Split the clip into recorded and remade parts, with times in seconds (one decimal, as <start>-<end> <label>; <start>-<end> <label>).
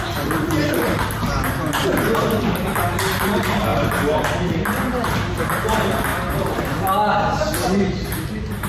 0.0-8.7 recorded